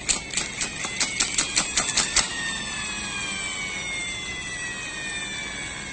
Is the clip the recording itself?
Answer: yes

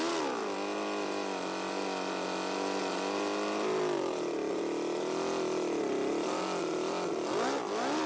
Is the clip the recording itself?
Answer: yes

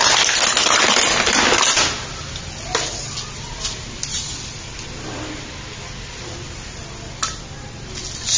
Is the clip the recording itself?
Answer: yes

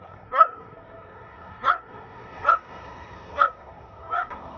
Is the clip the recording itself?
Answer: no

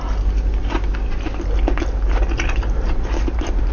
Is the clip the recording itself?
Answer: yes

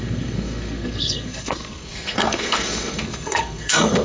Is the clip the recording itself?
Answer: no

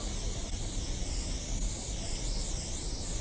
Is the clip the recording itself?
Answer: yes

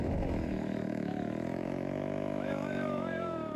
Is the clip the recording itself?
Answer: no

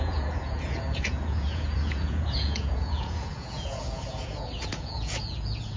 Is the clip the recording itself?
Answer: no